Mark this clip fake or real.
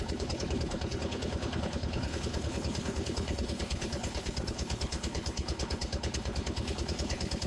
fake